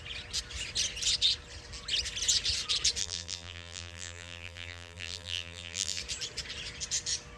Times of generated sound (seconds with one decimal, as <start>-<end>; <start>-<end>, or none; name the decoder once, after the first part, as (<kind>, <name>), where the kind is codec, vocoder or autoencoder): 3.0-6.0 (vocoder, BigVGAN v2)